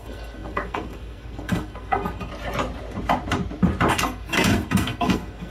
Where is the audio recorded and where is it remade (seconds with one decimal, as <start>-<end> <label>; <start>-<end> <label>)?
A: 0.0-2.3 remade; 2.3-3.9 recorded; 3.9-5.5 remade